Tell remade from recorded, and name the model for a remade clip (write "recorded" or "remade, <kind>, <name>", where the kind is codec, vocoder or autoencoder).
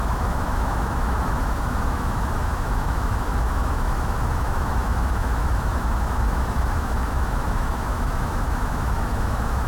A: remade, autoencoder, DAC-VAE